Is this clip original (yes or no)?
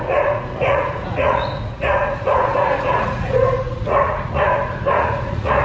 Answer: no